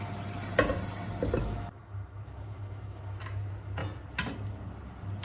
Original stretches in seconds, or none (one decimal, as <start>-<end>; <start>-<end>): 0.0-1.4; 3.2-5.2